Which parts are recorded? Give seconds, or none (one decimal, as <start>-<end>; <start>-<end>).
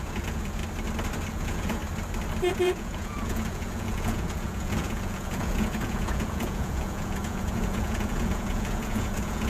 0.6-1.3; 1.8-2.5